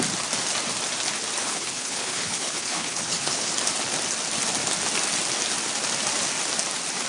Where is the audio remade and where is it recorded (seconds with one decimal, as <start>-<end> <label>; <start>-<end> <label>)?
0.0-1.4 recorded; 1.4-3.5 remade; 3.5-7.1 recorded

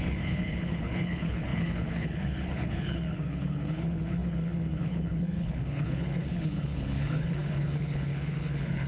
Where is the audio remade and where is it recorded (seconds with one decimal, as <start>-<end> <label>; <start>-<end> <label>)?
0.0-8.9 remade

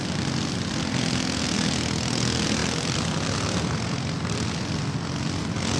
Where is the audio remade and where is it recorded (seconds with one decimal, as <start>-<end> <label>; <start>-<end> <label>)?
0.0-5.8 recorded

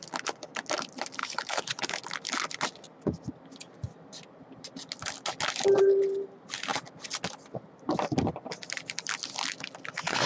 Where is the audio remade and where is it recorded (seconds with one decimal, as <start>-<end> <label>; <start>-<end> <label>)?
0.0-1.2 recorded; 1.2-1.8 remade; 1.8-10.3 recorded

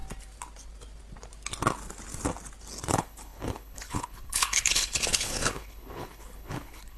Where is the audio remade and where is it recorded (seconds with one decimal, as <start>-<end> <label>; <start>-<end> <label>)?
0.0-2.9 recorded; 2.9-7.0 remade